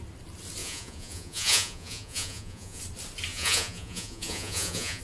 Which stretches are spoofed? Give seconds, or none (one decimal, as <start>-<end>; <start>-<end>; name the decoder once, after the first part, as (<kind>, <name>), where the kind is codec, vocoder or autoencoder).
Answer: 0.6-2.8 (vocoder, Vocos); 3.3-5.0